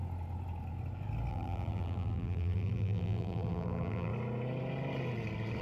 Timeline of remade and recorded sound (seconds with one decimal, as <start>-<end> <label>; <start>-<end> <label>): 0.0-1.3 recorded; 1.3-4.1 remade; 4.1-5.6 recorded